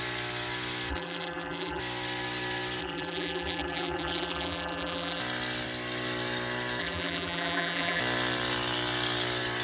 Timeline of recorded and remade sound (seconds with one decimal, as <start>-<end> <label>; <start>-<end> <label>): 0.0-0.9 recorded; 0.9-1.8 remade; 1.8-2.8 recorded; 2.8-5.2 remade; 5.2-6.8 recorded; 6.8-8.0 remade; 8.0-9.6 recorded